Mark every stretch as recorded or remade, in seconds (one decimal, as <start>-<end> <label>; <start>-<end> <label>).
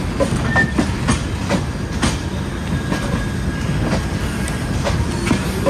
0.0-5.7 recorded